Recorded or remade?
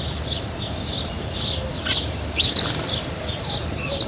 recorded